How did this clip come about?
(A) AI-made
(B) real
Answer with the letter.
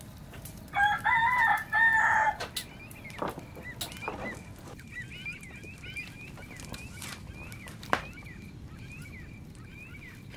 B